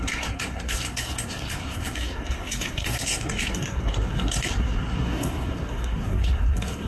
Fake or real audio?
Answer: fake